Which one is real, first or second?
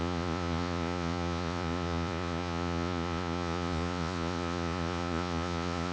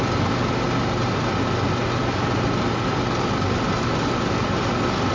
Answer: second